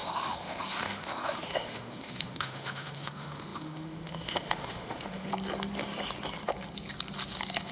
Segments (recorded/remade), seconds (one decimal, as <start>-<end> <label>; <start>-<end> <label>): 0.0-5.3 remade; 5.3-7.7 recorded